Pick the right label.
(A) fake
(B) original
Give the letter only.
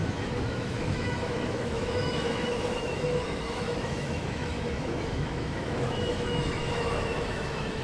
A